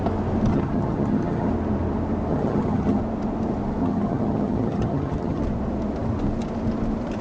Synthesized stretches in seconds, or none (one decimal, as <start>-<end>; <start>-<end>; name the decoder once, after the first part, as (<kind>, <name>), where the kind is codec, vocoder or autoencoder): 0.5-1.5 (vocoder, HiFi-GAN); 2.3-3.0; 3.8-5.4